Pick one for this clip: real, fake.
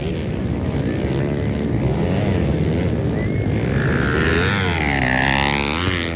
real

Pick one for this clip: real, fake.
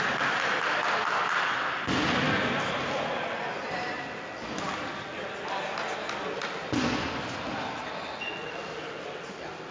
real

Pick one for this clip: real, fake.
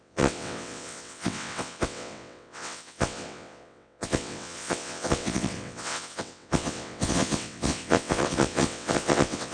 fake